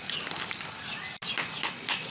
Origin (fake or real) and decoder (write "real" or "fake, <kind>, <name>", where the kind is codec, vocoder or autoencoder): real